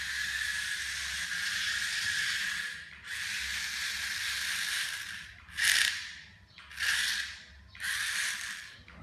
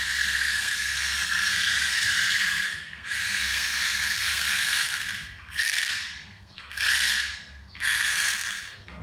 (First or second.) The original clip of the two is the first